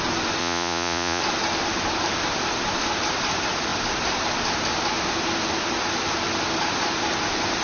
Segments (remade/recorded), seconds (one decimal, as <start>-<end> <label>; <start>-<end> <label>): 0.0-0.4 recorded; 0.4-1.2 remade; 1.2-7.6 recorded